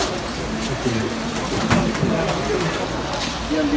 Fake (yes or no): no